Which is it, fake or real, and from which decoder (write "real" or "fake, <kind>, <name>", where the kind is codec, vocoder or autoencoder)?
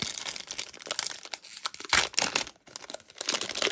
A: real